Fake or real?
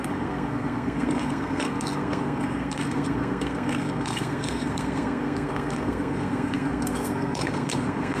fake